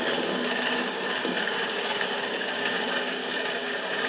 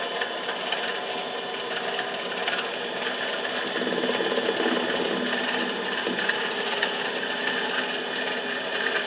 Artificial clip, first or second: first